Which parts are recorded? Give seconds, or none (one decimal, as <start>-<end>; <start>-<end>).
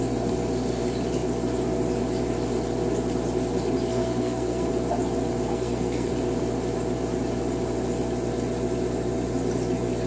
0.0-3.9; 4.7-5.5; 6.1-10.1